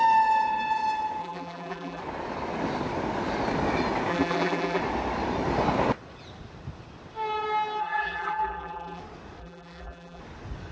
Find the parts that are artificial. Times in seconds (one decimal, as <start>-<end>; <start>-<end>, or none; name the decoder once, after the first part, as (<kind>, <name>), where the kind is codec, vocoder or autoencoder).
1.2-2.0 (vocoder, BigVGAN v2); 4.1-4.8; 7.8-9.0; 9.4-10.2